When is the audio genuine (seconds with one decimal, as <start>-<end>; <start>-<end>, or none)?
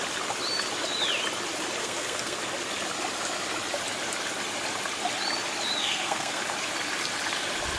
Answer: 0.0-1.8; 2.4-5.8; 6.4-7.8